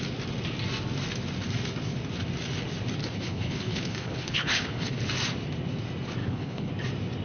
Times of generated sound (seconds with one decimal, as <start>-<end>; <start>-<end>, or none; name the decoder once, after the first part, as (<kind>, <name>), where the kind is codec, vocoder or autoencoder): 3.0-5.0 (codec, HILCodec); 6.2-6.7